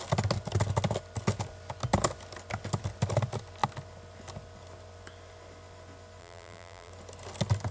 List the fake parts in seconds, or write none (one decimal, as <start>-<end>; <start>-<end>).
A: 6.2-6.9